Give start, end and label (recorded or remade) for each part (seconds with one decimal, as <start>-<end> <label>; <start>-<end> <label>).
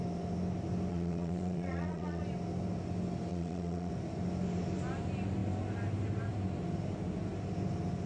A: 0.0-0.9 recorded; 0.9-2.2 remade; 2.2-3.3 recorded; 3.3-3.9 remade; 3.9-8.1 recorded